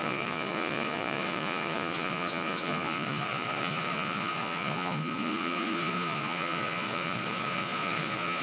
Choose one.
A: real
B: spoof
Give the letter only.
B